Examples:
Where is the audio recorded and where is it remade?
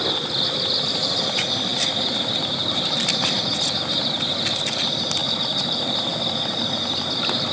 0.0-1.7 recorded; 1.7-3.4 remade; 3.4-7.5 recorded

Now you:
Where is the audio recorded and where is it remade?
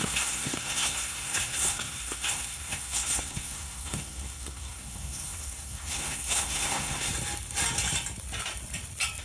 0.0-7.1 remade; 7.1-9.2 recorded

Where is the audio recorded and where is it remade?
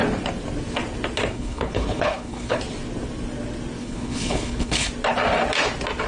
0.0-1.3 recorded; 1.3-2.6 remade; 2.6-3.8 recorded; 3.8-4.9 remade; 4.9-6.1 recorded